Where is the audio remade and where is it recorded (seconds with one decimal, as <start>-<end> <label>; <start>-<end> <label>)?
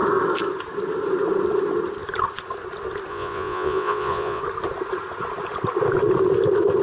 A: 0.0-3.1 recorded; 3.1-4.4 remade; 4.4-6.8 recorded